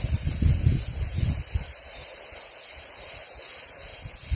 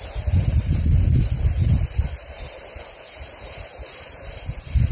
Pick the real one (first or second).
first